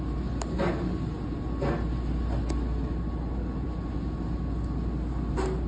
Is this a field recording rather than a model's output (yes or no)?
yes